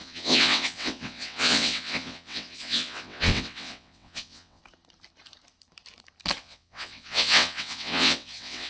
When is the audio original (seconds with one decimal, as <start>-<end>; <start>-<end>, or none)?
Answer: 4.6-6.4